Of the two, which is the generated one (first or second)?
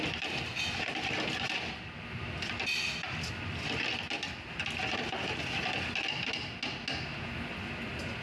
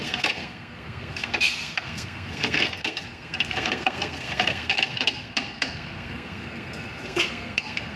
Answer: second